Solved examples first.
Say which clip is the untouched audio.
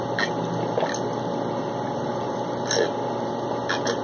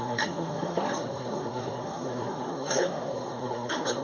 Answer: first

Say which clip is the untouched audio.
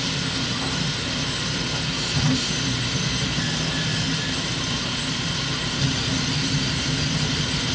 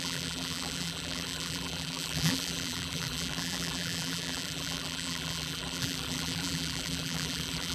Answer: first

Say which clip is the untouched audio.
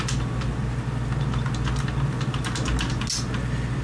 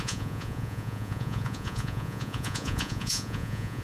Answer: first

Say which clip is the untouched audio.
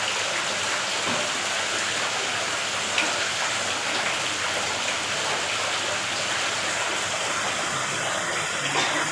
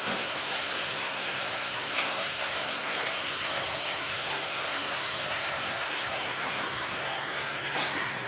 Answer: first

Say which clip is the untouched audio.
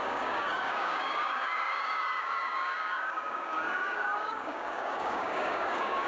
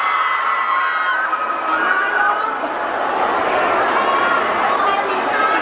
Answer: second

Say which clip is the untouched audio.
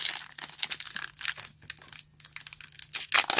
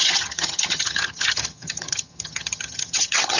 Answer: first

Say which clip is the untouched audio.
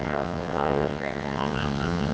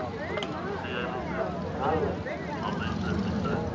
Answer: second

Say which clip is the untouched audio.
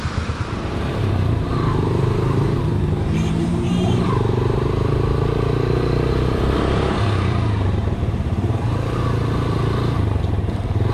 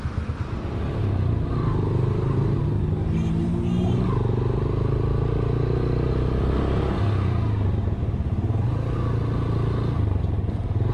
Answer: second